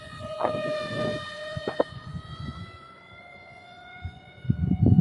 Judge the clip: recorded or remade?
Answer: remade